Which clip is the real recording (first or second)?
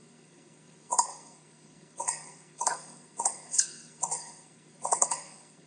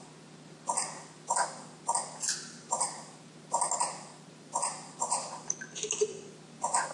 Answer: second